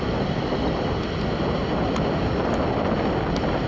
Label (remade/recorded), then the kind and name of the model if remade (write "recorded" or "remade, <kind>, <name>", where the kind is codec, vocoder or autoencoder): recorded